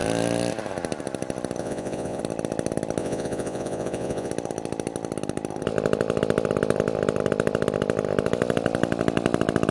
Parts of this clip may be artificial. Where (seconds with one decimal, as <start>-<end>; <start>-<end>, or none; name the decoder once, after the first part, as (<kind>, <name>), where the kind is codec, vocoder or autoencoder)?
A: 1.6-2.2 (vocoder, Vocos); 3.0-4.3